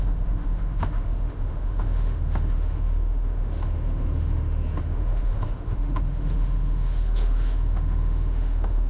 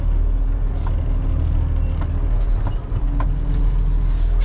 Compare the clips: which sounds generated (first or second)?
first